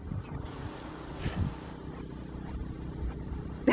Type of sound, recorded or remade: recorded